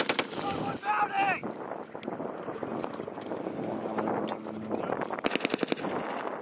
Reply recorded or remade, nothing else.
recorded